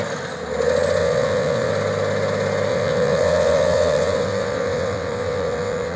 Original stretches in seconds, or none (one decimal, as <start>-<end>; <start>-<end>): 0.0-1.0; 1.7-2.7